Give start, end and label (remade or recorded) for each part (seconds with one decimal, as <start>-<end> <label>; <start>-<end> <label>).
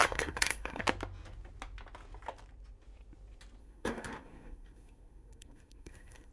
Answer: 0.0-0.8 remade; 0.8-3.6 recorded; 3.6-6.3 remade